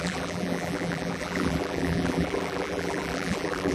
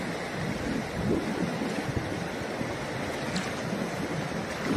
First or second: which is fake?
first